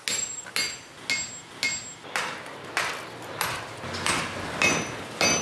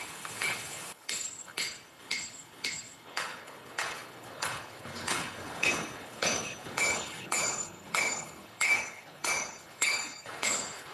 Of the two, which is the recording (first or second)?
first